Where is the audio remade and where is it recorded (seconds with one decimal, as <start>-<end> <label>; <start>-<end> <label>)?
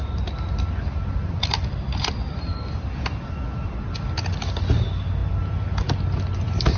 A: 0.0-6.8 recorded